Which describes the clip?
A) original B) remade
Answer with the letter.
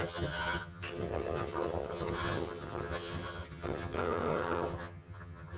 B